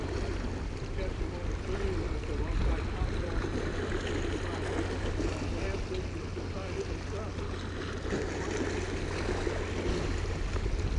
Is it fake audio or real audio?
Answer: real